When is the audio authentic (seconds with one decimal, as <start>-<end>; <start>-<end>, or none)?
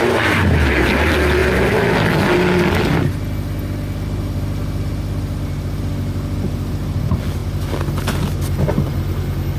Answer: 0.0-9.6